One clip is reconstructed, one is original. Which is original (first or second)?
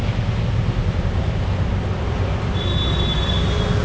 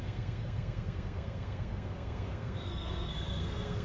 first